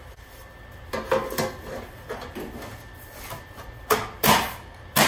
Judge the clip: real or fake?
real